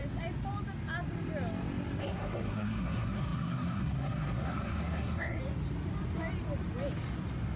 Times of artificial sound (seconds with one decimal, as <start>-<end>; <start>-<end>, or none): 2.0-5.4